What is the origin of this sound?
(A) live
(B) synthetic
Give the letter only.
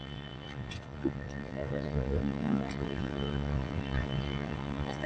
B